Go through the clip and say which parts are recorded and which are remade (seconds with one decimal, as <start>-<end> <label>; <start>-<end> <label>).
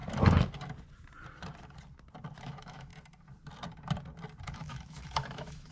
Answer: 0.0-2.4 recorded; 2.4-2.9 remade; 2.9-4.4 recorded; 4.4-5.7 remade